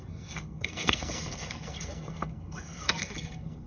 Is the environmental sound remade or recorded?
remade